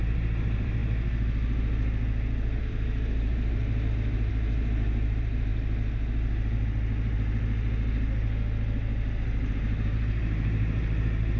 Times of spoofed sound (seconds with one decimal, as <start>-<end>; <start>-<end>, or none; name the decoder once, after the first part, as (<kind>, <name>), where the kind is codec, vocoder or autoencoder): 0.0-0.8 (vocoder, BigVGAN v2); 2.6-3.6; 4.3-5.5; 9.5-11.4